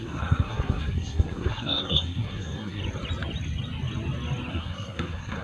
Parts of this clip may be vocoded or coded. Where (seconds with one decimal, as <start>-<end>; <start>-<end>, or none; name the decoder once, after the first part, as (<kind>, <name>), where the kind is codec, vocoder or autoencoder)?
0.0-2.8 (codec, SNAC); 4.5-5.4